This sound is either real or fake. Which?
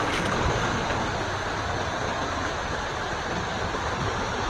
fake